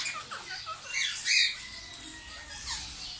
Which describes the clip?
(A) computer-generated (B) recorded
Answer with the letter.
B